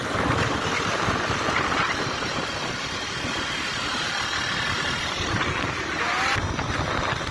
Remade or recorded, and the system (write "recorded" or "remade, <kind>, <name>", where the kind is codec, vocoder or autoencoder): recorded